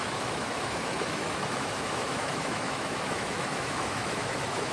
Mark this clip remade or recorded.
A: remade